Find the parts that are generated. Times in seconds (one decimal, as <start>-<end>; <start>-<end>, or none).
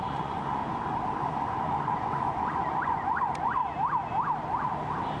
0.0-0.6; 1.2-3.6